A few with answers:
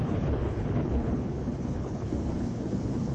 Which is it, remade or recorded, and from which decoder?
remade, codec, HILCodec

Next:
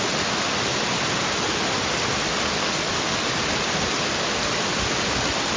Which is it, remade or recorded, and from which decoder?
recorded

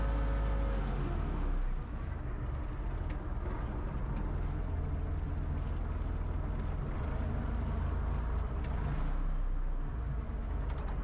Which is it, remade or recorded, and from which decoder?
recorded